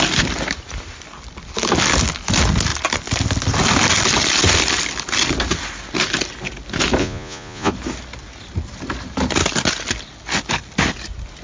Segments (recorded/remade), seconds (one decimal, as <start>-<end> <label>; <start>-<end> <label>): 0.0-7.0 recorded; 7.0-7.7 remade; 7.7-11.4 recorded